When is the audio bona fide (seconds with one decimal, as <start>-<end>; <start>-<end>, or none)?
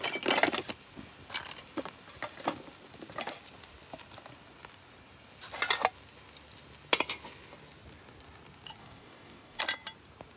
0.0-8.8; 9.6-10.4